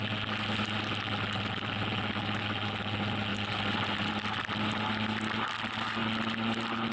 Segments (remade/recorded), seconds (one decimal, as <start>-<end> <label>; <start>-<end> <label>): 0.0-6.9 recorded